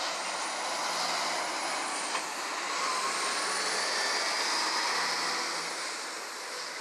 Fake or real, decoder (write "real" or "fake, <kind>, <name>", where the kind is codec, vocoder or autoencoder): real